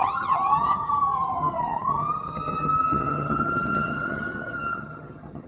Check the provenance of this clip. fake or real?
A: fake